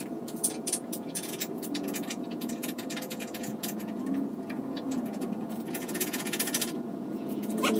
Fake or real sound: fake